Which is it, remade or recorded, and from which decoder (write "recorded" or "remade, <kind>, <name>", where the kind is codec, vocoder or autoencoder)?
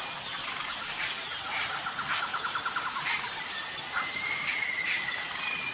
remade, vocoder, BigVGAN v2